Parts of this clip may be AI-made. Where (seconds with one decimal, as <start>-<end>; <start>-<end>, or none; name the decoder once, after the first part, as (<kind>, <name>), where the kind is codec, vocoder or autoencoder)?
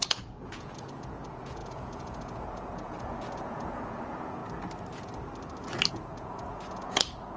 0.0-4.4 (vocoder, Vocos); 5.9-7.4